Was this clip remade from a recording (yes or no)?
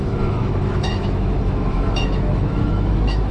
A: yes